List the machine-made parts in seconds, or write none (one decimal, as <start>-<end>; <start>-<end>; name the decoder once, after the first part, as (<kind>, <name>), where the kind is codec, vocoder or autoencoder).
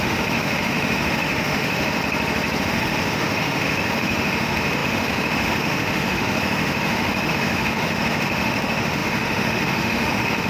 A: 0.0-2.0 (autoencoder, DAC-VAE); 2.6-10.5